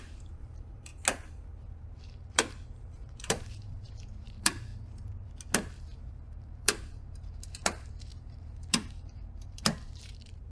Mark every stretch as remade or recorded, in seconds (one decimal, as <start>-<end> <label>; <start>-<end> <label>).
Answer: 0.0-0.9 remade; 0.9-1.7 recorded; 1.7-4.7 remade; 4.7-6.1 recorded; 6.1-10.5 remade